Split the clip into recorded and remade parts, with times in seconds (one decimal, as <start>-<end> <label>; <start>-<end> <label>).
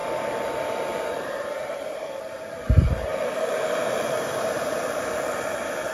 0.0-5.9 remade